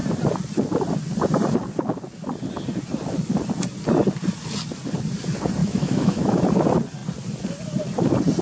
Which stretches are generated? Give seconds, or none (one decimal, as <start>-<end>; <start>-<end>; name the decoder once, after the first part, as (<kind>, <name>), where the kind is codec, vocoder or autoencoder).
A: 5.6-6.4 (autoencoder, DAC-VAE)